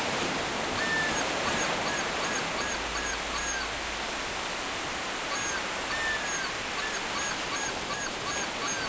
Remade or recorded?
recorded